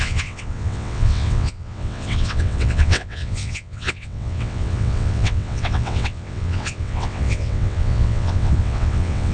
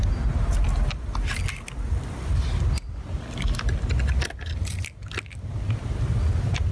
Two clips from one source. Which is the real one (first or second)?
second